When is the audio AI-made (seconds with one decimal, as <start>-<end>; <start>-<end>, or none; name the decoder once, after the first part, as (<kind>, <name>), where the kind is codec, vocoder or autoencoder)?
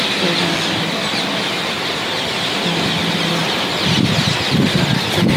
none